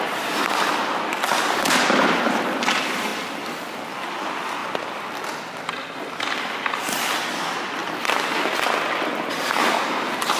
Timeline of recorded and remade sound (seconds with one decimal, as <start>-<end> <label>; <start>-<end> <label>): 0.0-3.1 remade; 3.1-4.0 recorded; 4.0-7.8 remade; 7.8-9.0 recorded; 9.0-10.4 remade